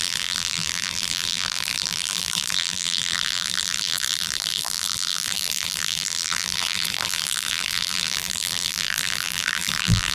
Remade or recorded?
remade